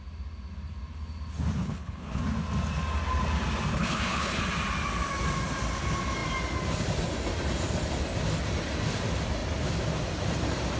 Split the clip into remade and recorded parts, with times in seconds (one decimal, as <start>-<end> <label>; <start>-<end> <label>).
0.0-1.6 recorded; 1.6-2.2 remade; 2.2-3.7 recorded; 3.7-4.4 remade; 4.4-10.8 recorded